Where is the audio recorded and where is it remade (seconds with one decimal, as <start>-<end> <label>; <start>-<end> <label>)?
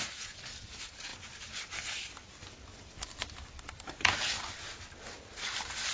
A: 0.0-5.9 recorded